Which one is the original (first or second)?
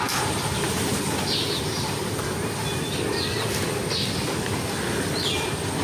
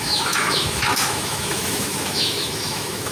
first